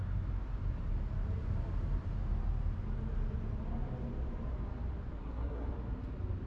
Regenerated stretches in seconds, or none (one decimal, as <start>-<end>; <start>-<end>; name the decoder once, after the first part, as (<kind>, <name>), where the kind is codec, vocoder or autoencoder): 5.2-5.7 (codec, SNAC)